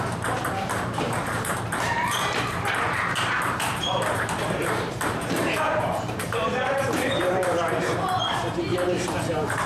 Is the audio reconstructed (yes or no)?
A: yes